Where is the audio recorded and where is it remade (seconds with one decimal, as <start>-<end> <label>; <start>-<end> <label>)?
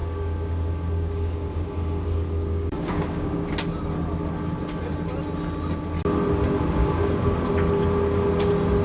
0.0-3.4 remade; 3.4-6.8 recorded; 6.8-7.5 remade; 7.5-8.8 recorded